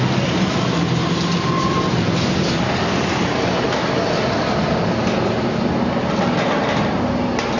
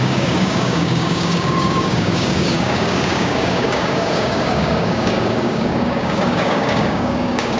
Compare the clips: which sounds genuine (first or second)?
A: first